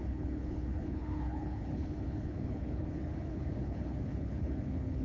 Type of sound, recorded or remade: remade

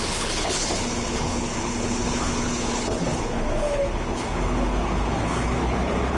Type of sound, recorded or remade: remade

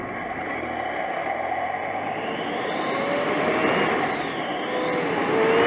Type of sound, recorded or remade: recorded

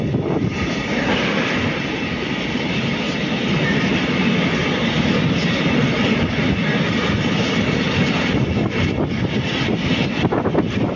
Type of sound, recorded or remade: recorded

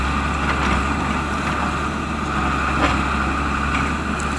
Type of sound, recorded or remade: recorded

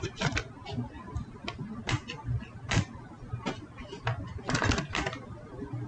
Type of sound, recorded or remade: recorded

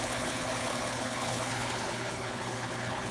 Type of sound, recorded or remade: remade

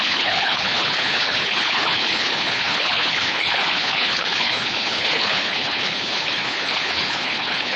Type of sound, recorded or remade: remade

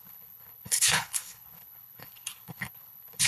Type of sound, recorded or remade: remade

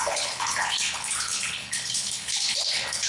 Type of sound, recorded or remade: remade